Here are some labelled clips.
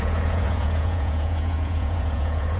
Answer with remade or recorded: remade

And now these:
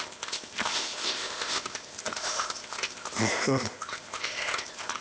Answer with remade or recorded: remade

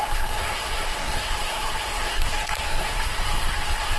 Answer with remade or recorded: remade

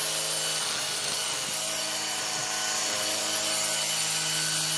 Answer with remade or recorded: recorded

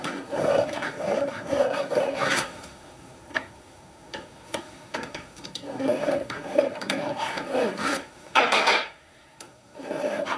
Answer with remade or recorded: remade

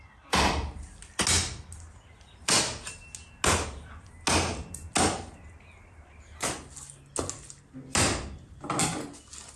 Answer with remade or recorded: recorded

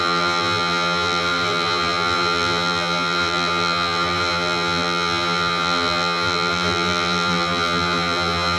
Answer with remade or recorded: remade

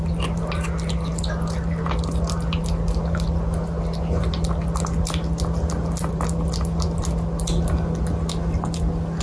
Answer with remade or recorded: recorded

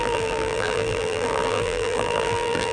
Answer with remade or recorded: remade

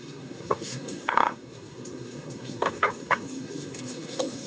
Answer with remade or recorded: remade